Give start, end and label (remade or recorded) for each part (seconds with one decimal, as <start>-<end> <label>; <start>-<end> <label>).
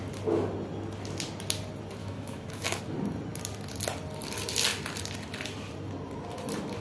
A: 0.0-2.0 recorded; 2.0-2.8 remade; 2.8-6.8 recorded